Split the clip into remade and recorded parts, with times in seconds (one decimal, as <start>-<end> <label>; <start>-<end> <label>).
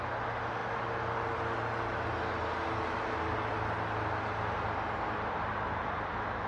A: 0.0-6.5 recorded